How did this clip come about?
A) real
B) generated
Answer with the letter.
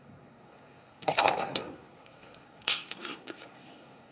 B